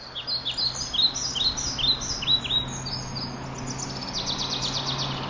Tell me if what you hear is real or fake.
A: real